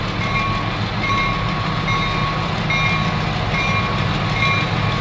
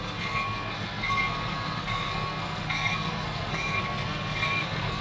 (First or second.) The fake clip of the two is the second